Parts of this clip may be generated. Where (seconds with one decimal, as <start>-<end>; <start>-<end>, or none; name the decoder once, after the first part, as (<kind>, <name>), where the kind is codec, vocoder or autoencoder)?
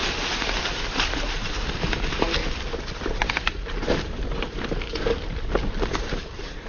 0.6-6.7 (vocoder, BigVGAN v2)